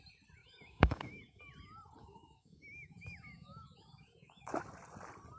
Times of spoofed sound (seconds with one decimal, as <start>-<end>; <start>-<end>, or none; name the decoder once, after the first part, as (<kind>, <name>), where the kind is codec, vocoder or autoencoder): 0.4-1.4 (autoencoder, DAC-VAE); 2.0-4.5